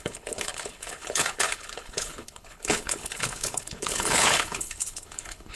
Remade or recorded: remade